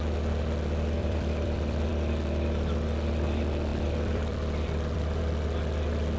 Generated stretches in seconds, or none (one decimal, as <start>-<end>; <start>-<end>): 1.0-1.9; 3.7-5.2